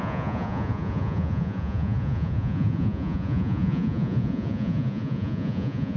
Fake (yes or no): yes